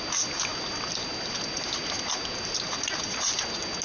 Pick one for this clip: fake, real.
real